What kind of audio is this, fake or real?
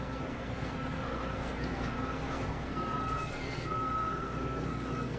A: fake